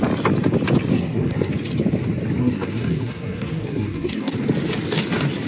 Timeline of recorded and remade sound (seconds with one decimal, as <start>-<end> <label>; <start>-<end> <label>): 0.0-0.9 recorded; 0.9-1.5 remade; 1.5-2.4 recorded; 2.4-4.3 remade; 4.3-5.5 recorded